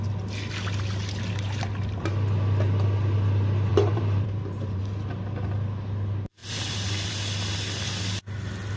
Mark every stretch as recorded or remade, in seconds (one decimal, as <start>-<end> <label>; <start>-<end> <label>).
0.0-3.7 recorded; 3.7-4.8 remade; 4.8-6.4 recorded; 6.4-7.1 remade; 7.1-8.8 recorded